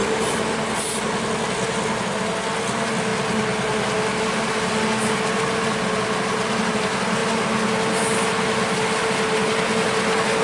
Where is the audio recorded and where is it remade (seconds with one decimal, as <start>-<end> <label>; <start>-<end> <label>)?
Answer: 0.0-10.4 recorded